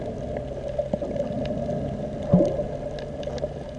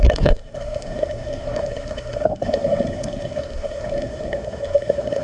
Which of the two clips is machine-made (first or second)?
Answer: second